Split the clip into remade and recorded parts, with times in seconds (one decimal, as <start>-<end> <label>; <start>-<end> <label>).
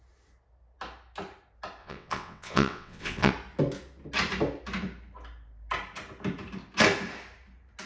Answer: 0.0-1.8 recorded; 1.8-3.3 remade; 3.3-7.9 recorded